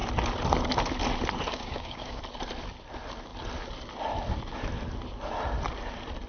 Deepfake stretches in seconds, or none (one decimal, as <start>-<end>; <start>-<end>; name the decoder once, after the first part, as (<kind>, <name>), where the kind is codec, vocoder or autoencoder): 1.5-2.2 (codec, DAC)